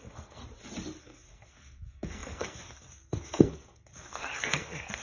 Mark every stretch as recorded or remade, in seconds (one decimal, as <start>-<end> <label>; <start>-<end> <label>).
0.0-0.4 remade; 0.4-1.0 recorded; 1.0-5.0 remade

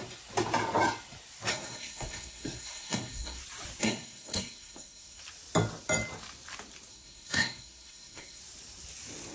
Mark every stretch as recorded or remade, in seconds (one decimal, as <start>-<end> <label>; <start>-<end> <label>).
0.0-1.5 recorded; 1.5-3.4 remade; 3.4-3.8 recorded; 3.8-5.2 remade; 5.2-6.9 recorded; 6.9-8.4 remade; 8.4-9.3 recorded

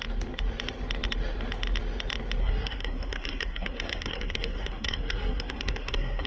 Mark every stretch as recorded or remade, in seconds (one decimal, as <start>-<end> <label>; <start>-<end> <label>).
0.0-2.4 recorded; 2.4-6.3 remade

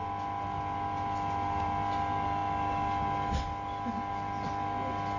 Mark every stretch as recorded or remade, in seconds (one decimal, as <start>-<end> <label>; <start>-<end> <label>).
0.0-5.2 recorded

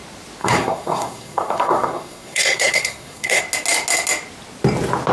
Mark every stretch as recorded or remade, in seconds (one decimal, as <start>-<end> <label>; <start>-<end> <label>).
0.0-0.4 recorded; 0.4-3.4 remade; 3.4-5.1 recorded

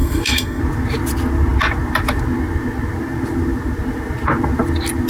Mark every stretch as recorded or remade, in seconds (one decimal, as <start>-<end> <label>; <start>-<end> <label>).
0.0-0.6 remade; 0.6-5.1 recorded

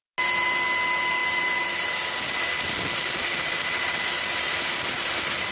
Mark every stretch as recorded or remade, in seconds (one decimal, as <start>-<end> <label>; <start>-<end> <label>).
0.0-5.5 recorded